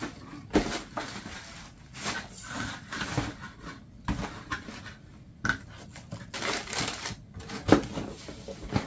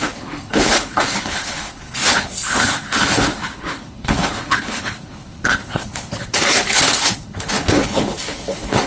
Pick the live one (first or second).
first